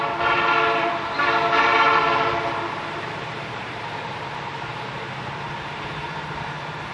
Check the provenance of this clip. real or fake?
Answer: fake